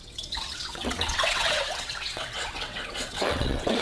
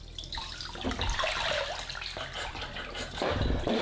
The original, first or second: second